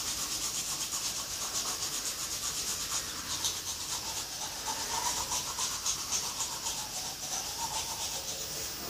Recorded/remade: recorded